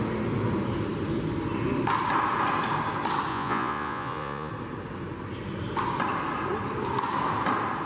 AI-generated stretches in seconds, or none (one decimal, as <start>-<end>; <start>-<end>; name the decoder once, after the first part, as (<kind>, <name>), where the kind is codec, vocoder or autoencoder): 3.3-4.5 (vocoder, Vocos)